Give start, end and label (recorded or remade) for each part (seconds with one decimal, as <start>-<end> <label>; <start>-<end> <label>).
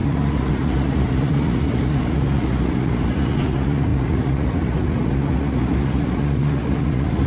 0.0-7.3 remade